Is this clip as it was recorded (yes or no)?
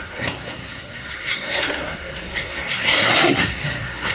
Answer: no